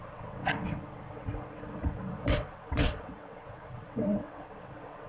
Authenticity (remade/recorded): remade